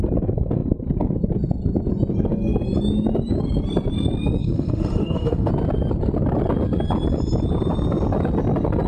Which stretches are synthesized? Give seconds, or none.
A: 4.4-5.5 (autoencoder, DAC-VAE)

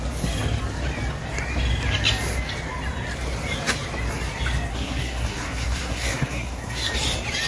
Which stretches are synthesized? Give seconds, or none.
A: 4.7-6.9 (codec, SNAC)

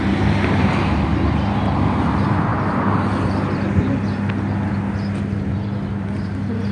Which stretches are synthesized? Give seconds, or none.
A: none

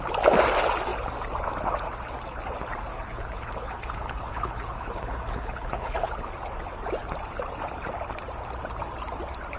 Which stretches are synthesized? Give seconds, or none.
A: 2.9-6.3 (codec, HILCodec)

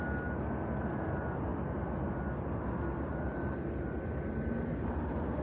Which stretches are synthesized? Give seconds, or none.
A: none

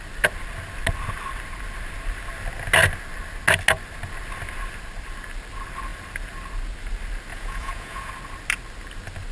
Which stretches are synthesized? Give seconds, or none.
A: 7.3-8.1 (vocoder, Vocos)

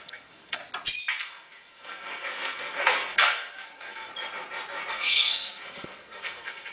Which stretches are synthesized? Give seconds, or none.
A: 0.0-0.6 (codec, SNAC); 1.2-4.1; 4.9-6.7